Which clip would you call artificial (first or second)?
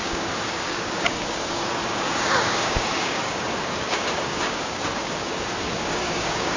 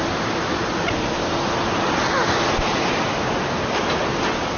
first